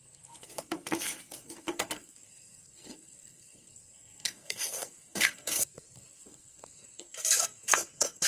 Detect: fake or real fake